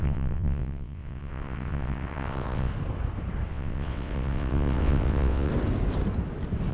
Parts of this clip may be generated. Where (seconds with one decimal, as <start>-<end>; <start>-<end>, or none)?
0.0-2.7; 3.5-5.5